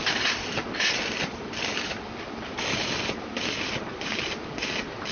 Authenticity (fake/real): real